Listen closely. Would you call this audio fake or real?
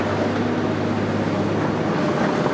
real